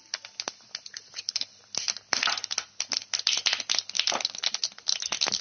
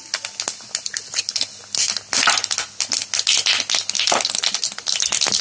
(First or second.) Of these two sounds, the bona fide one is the second